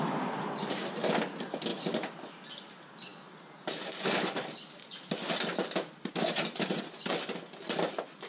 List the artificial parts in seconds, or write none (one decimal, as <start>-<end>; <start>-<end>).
0.0-1.7; 2.7-8.3